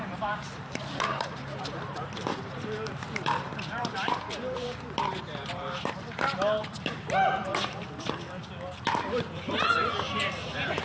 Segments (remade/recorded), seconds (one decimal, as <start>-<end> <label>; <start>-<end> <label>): 0.0-7.5 remade; 7.5-9.5 recorded; 9.5-10.8 remade